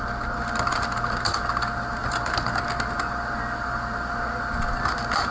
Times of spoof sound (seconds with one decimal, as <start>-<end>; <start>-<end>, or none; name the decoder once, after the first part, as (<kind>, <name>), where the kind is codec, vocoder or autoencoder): none